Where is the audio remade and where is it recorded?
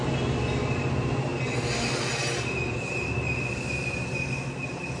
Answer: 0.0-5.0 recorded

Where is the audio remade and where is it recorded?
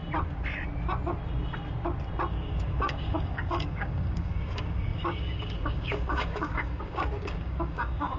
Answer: 0.0-2.3 recorded; 2.3-8.2 remade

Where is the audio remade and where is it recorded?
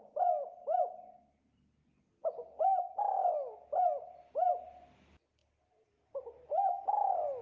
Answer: 0.0-7.4 recorded